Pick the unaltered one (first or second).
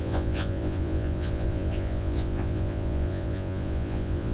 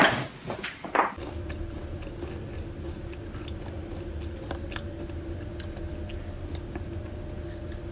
second